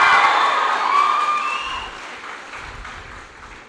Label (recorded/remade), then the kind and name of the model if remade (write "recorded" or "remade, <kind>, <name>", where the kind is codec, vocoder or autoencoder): recorded